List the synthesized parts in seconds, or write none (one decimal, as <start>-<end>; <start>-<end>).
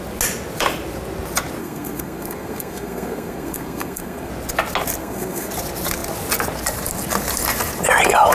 1.6-4.3; 5.0-5.5